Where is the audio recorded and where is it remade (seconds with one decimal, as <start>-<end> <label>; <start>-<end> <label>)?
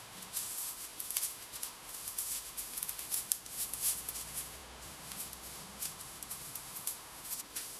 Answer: 0.0-7.8 remade